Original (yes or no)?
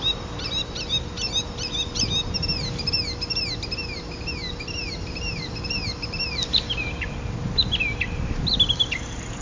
yes